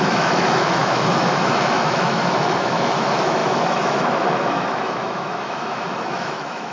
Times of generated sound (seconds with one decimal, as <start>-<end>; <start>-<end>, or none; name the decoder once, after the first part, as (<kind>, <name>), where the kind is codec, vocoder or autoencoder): 0.0-6.7 (autoencoder, DAC-VAE)